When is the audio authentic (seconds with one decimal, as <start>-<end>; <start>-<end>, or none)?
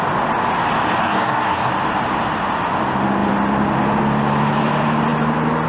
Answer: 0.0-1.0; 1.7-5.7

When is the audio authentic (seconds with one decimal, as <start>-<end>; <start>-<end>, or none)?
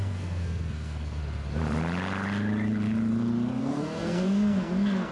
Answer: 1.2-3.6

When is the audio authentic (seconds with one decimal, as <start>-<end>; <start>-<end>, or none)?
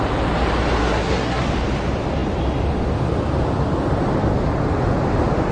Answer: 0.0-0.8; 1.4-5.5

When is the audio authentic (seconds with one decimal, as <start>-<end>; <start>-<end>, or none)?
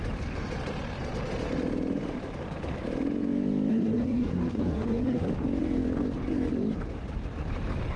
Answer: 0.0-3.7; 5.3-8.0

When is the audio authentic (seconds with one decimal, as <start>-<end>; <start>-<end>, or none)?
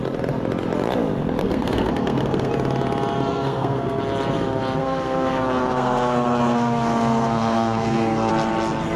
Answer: 0.0-1.4; 2.5-3.3; 4.0-4.8; 8.3-9.0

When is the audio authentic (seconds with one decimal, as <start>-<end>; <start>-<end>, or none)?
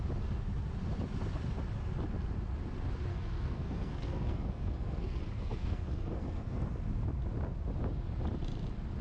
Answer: 0.0-3.1; 6.8-9.0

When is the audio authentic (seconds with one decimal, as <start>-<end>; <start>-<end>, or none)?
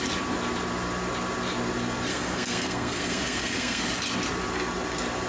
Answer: 0.0-2.1; 3.8-5.3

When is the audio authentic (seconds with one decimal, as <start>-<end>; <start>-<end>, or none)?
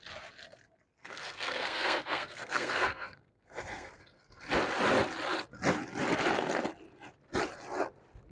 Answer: 0.0-1.0; 4.0-8.3